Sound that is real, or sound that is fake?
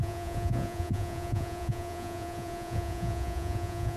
fake